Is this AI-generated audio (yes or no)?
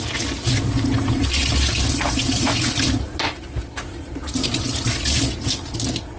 no